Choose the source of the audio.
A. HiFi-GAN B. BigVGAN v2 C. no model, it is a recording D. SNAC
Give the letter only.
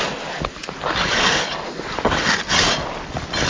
C